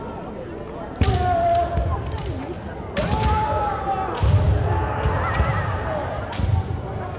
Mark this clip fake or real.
real